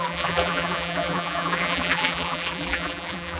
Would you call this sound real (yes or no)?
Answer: no